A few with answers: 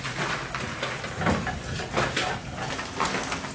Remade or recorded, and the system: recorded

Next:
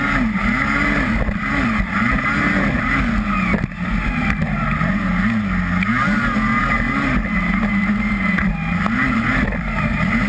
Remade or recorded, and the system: recorded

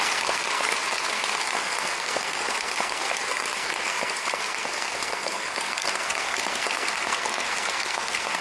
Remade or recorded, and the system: remade, codec, SNAC